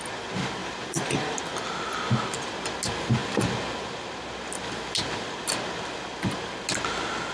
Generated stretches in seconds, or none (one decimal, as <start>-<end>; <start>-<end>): 0.6-1.4